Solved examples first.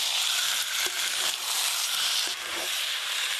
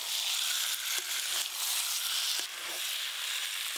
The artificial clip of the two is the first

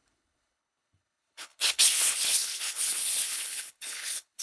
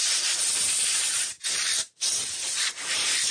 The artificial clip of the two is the first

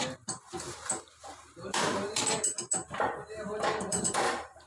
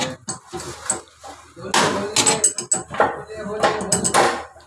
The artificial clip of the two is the first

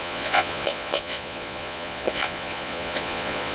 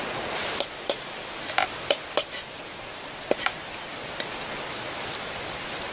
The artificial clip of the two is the first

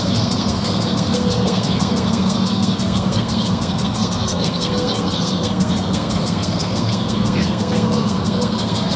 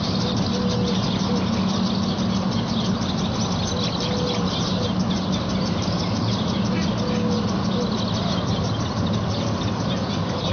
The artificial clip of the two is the first